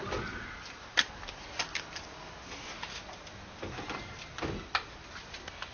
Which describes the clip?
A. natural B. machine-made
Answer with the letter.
A